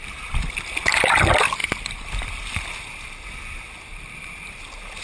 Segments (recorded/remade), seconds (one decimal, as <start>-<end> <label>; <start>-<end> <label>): 0.0-5.0 recorded